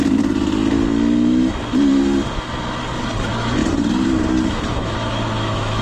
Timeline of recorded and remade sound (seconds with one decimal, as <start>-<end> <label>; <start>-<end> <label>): 0.0-3.2 recorded; 3.2-3.6 remade; 3.6-4.5 recorded; 4.5-5.8 remade

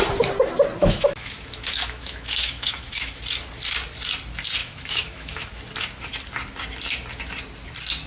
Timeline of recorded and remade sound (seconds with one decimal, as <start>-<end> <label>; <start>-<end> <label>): 0.0-0.8 recorded; 0.8-3.2 remade; 3.2-4.6 recorded; 4.6-5.6 remade; 5.6-8.1 recorded

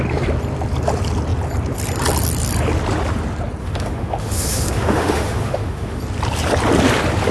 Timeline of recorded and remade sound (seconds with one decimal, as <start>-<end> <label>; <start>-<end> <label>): 0.0-3.6 recorded; 3.6-6.0 remade; 6.0-7.3 recorded

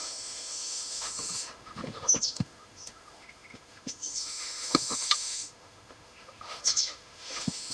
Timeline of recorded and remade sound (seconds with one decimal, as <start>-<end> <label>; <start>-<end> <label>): 0.0-7.7 remade